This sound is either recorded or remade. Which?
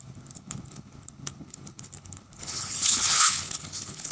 remade